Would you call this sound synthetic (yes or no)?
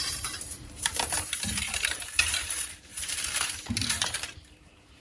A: yes